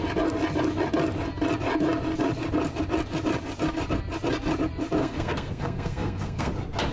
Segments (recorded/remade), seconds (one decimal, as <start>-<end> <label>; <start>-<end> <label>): 0.0-5.0 recorded; 5.0-6.5 remade; 6.5-6.9 recorded